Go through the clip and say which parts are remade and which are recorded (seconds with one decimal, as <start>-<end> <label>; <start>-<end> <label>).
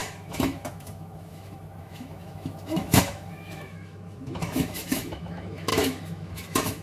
0.0-6.8 remade